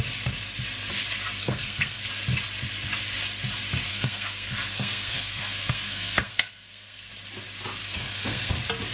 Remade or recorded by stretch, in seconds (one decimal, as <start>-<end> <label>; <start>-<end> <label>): 0.0-1.4 recorded; 1.4-2.0 remade; 2.0-3.9 recorded; 3.9-7.1 remade; 7.1-7.8 recorded; 7.8-8.5 remade; 8.5-8.9 recorded